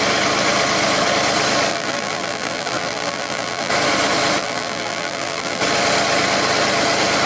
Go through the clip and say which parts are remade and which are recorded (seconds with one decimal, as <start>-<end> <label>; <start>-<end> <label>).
0.0-1.7 recorded; 1.7-3.7 remade; 3.7-4.4 recorded; 4.4-5.6 remade; 5.6-7.3 recorded